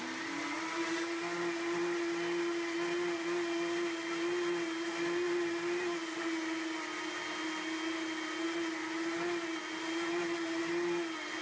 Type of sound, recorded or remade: recorded